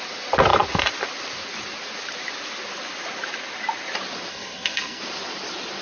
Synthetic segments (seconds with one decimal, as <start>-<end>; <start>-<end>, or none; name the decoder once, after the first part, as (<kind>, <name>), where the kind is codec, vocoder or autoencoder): 4.3-5.0 (codec, SNAC)